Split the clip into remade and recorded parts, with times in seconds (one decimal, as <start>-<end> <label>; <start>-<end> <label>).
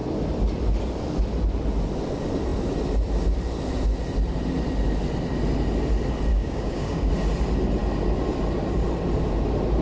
0.0-6.3 recorded; 6.3-7.1 remade; 7.1-9.8 recorded